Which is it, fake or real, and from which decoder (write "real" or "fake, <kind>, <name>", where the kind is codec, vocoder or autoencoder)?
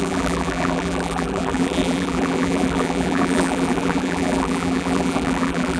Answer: fake, vocoder, BigVGAN v2